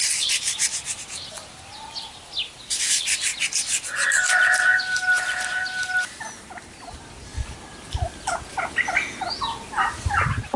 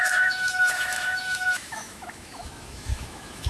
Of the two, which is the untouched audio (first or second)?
first